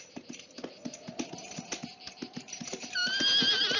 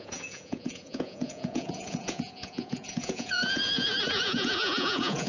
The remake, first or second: second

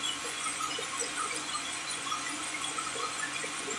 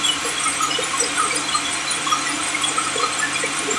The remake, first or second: first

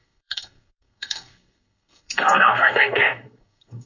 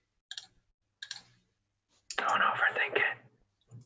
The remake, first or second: first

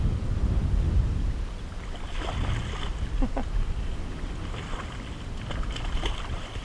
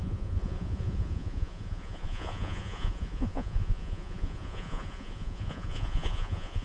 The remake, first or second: second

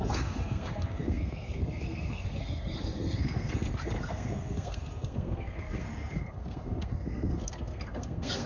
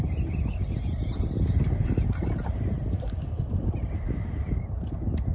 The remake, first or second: first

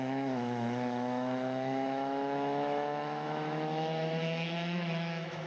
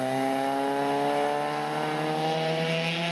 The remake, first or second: first